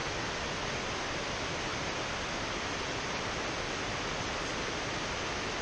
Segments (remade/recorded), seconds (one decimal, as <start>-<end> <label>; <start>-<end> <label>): 0.0-5.6 recorded